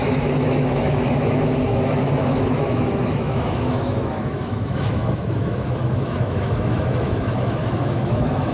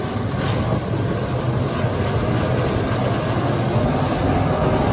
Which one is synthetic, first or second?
first